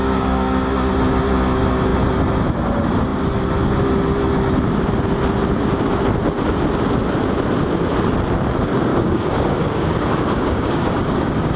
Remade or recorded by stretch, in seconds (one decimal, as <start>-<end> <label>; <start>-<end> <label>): 0.0-0.9 remade; 0.9-8.9 recorded; 8.9-11.6 remade